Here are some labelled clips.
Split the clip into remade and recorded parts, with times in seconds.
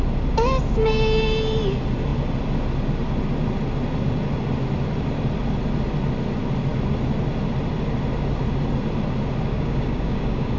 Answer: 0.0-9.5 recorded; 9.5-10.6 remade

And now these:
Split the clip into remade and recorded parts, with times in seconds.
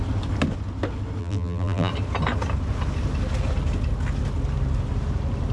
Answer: 0.0-1.2 recorded; 1.2-1.9 remade; 1.9-5.5 recorded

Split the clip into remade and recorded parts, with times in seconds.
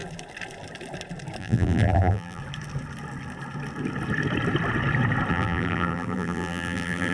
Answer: 0.0-1.4 recorded; 1.4-2.4 remade; 2.4-5.3 recorded; 5.3-7.1 remade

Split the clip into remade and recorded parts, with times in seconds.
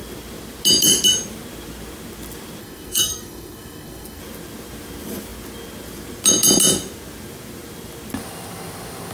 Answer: 0.0-2.6 recorded; 2.6-4.2 remade; 4.2-9.1 recorded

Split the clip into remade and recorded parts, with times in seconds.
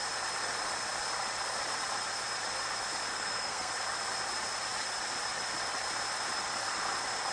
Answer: 0.0-3.1 recorded; 3.1-3.7 remade; 3.7-7.3 recorded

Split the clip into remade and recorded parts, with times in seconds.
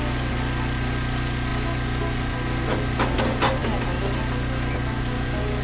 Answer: 0.0-5.6 recorded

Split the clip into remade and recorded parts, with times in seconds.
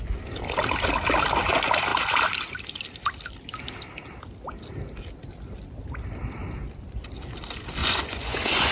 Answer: 0.0-7.8 recorded; 7.8-8.7 remade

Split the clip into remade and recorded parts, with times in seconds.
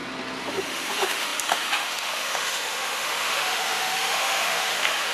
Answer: 0.0-0.5 recorded; 0.5-5.1 remade